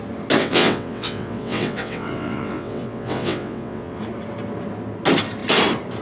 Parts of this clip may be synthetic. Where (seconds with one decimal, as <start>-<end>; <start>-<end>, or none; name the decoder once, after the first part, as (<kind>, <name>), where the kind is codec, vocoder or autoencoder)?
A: 0.4-4.0 (vocoder, WaveNeXt)